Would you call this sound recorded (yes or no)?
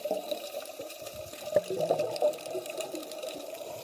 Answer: no